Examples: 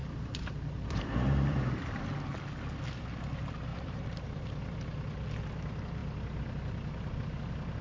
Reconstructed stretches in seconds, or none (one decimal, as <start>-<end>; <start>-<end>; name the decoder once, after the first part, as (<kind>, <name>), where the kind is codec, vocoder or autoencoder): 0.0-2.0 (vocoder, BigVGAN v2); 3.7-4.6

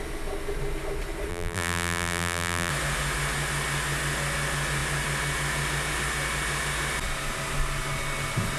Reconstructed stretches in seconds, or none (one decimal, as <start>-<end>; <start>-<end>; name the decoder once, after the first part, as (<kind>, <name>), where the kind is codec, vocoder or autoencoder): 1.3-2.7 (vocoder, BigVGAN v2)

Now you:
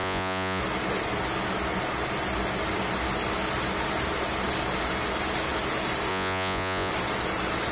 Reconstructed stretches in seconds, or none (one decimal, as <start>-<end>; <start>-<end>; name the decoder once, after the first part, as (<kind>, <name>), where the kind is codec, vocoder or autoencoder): 0.0-0.6 (vocoder, Vocos); 6.1-6.9